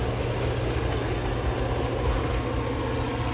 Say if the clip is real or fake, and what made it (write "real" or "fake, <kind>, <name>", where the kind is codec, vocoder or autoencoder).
real